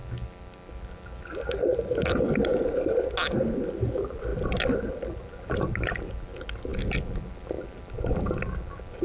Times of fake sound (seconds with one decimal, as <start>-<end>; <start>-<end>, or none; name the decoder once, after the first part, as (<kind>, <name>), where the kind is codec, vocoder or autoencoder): none